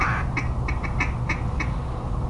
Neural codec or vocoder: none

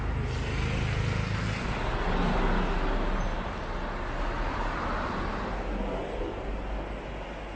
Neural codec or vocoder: none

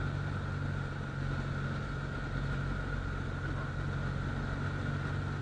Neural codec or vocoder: none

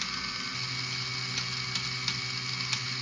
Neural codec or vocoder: none